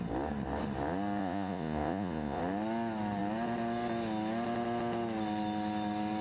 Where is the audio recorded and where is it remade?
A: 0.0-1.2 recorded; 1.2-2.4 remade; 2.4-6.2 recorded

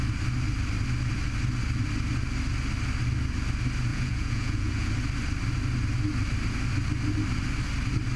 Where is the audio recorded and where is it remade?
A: 0.0-3.9 recorded; 3.9-4.9 remade; 4.9-8.2 recorded

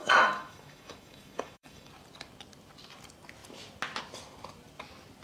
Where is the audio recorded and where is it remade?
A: 0.0-1.9 remade; 1.9-5.2 recorded

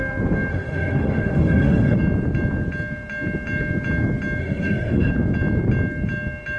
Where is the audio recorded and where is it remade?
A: 0.0-0.5 recorded; 0.5-2.0 remade; 2.0-4.4 recorded; 4.4-5.1 remade; 5.1-6.6 recorded

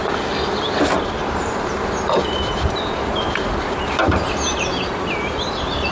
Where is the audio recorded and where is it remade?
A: 0.0-1.2 recorded; 1.2-4.7 remade; 4.7-5.9 recorded

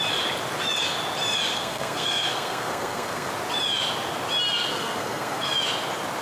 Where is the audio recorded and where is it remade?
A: 0.0-1.5 recorded; 1.5-3.3 remade; 3.3-4.7 recorded; 4.7-5.5 remade; 5.5-6.2 recorded